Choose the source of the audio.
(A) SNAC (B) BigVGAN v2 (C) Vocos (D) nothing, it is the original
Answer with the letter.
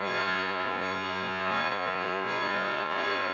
C